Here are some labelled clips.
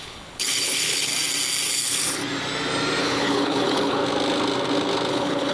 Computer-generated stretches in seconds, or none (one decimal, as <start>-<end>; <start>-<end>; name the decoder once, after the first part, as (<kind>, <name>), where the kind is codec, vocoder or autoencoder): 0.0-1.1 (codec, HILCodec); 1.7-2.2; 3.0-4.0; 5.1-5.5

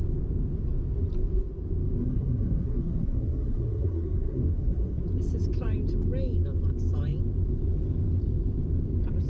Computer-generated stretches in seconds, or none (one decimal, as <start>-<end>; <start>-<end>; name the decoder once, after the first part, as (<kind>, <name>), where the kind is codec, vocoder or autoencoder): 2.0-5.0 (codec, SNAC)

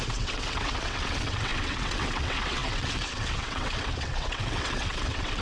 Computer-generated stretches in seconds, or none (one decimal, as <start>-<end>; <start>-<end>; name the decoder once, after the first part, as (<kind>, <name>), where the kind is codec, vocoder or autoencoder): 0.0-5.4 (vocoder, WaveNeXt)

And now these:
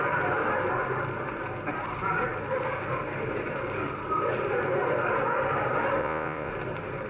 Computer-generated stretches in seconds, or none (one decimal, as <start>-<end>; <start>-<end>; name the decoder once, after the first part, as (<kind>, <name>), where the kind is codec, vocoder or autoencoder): 6.0-6.5 (vocoder, Vocos)

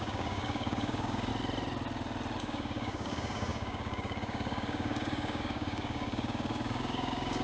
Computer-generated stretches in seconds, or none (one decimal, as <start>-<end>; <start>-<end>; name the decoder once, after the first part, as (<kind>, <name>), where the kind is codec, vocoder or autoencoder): 0.0-1.3 (codec, DAC); 2.4-7.4